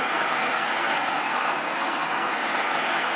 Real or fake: fake